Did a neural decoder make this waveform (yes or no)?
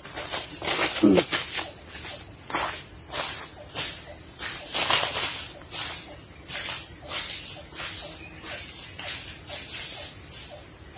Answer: no